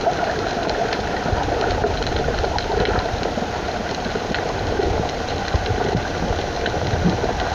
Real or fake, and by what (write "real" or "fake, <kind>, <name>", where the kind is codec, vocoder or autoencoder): real